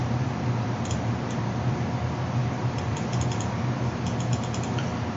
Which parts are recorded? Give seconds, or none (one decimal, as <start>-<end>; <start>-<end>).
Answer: 1.6-2.4; 3.2-5.2